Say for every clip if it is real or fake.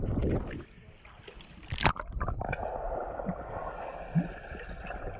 real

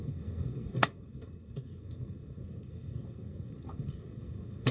fake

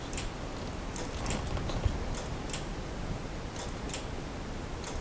real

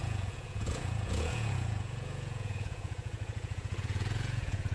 fake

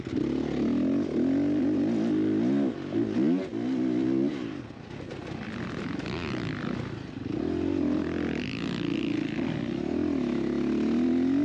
real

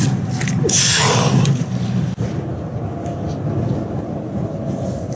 real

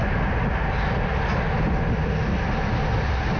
real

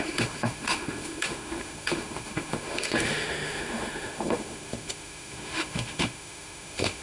fake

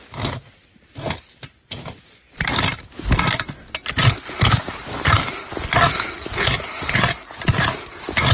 real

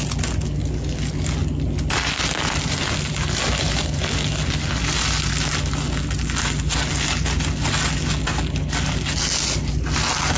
real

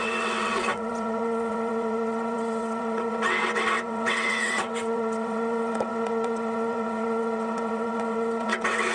fake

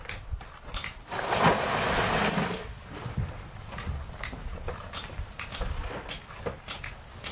real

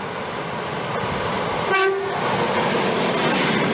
real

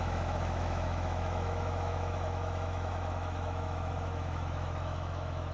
fake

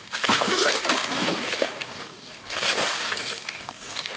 fake